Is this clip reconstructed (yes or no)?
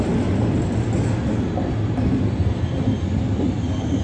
no